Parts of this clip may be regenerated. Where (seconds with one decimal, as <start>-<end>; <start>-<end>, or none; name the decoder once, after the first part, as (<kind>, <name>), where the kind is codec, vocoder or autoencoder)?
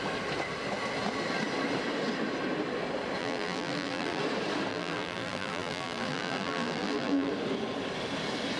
3.2-4.2 (vocoder, BigVGAN v2); 4.7-7.3